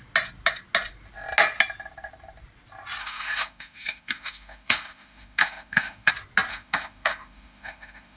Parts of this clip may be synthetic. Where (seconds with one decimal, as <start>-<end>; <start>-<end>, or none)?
3.0-6.1; 6.5-8.2